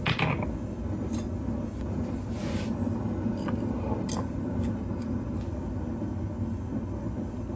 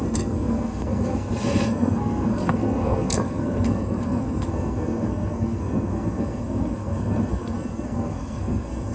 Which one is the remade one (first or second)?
second